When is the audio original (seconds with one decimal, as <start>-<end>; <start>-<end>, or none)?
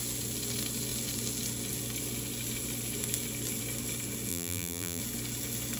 0.0-4.3; 5.0-5.8